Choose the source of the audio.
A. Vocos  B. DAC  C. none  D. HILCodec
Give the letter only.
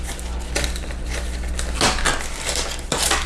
C